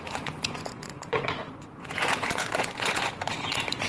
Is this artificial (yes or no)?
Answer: yes